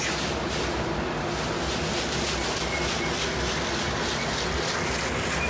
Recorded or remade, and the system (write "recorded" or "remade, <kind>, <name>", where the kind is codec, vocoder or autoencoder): recorded